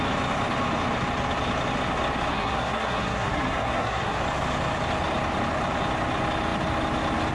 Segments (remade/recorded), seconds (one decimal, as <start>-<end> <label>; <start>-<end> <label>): 0.0-2.3 recorded; 2.3-4.2 remade; 4.2-7.3 recorded